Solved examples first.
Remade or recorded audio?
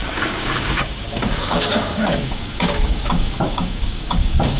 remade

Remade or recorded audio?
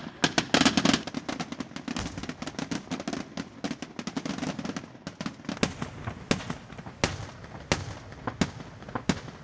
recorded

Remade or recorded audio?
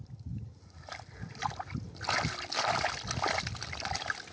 recorded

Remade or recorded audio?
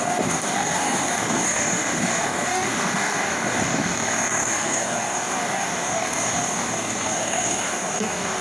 remade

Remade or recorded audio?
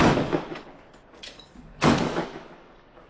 remade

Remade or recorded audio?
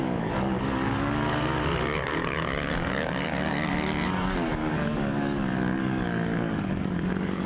remade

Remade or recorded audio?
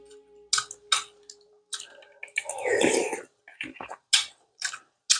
recorded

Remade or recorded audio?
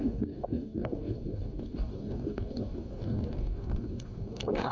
remade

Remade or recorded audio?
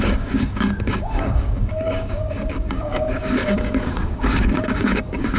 remade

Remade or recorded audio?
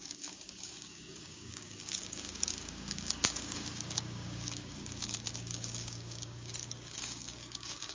remade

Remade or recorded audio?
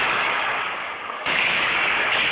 remade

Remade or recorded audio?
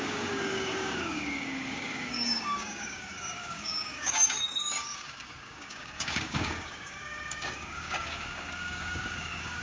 remade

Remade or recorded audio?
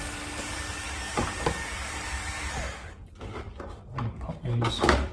remade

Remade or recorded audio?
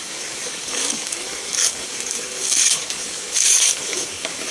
remade